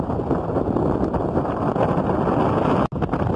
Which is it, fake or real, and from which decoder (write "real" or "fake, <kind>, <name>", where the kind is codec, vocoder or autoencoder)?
real